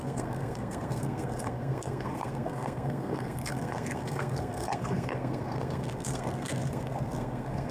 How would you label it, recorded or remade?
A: remade